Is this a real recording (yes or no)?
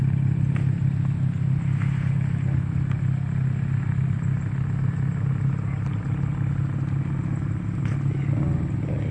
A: yes